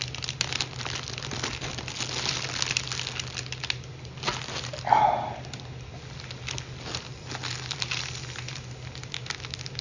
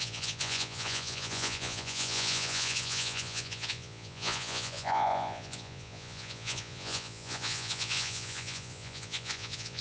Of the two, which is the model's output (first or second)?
second